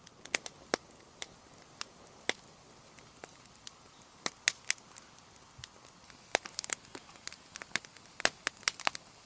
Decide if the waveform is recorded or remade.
recorded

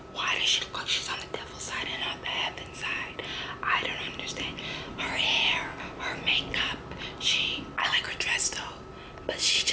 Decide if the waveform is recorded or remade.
recorded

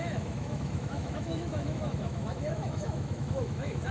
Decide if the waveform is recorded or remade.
remade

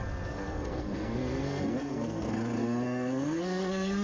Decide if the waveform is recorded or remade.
remade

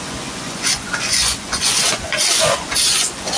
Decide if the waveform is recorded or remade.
remade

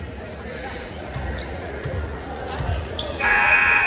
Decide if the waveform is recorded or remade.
remade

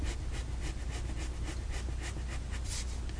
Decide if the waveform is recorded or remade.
recorded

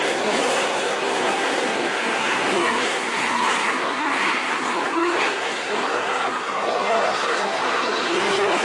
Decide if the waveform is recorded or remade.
remade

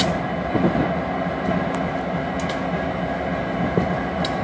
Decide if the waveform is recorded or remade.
recorded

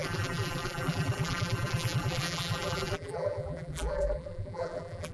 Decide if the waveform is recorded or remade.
remade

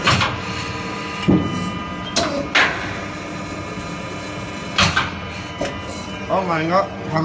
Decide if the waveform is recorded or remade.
recorded